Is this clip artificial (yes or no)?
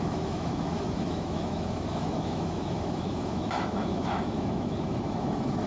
yes